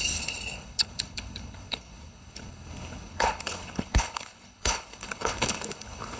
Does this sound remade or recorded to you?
remade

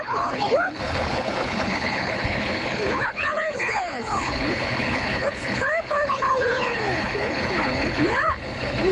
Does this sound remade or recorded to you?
remade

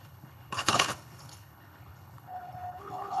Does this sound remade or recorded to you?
remade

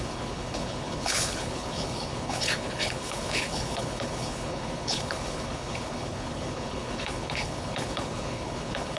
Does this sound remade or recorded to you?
remade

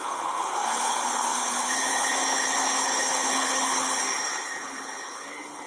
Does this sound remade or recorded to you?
remade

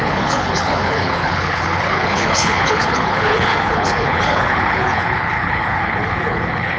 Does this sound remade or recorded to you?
remade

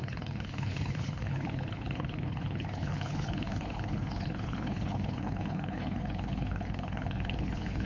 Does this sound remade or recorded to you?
remade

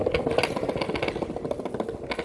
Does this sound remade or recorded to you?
recorded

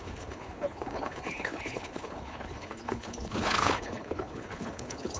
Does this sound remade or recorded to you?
remade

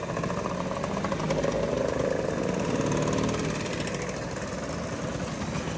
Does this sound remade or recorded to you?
recorded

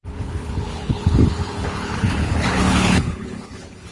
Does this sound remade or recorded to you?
remade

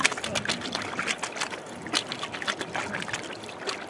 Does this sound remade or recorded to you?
recorded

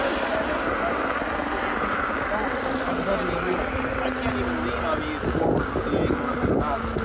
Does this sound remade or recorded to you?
recorded